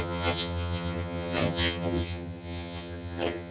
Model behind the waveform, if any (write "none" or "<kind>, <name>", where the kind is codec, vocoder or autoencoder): vocoder, HiFi-GAN